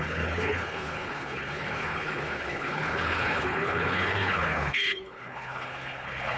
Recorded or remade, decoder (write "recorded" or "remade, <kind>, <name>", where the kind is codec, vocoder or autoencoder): remade, codec, HILCodec